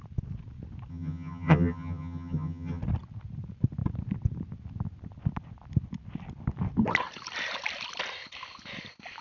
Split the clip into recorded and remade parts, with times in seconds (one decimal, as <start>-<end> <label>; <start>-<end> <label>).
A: 0.0-0.9 recorded; 0.9-2.8 remade; 2.8-9.2 recorded